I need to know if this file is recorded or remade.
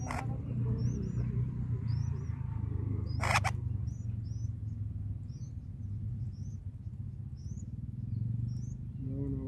recorded